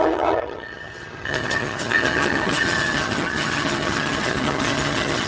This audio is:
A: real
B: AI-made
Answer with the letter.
B